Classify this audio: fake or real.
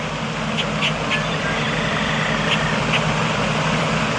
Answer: real